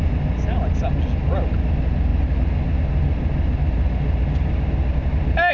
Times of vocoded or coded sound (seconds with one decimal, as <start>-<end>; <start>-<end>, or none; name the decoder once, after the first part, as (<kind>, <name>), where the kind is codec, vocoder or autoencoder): none